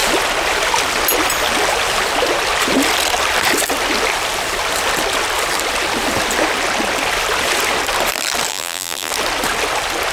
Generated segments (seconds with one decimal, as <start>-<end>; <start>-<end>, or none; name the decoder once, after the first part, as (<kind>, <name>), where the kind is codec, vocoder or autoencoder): 8.5-9.1 (vocoder, BigVGAN v2)